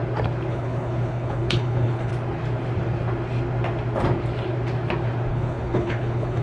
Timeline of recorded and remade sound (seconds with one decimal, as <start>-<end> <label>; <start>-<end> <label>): 0.0-0.5 recorded; 0.5-2.1 remade; 2.1-5.3 recorded; 5.3-6.4 remade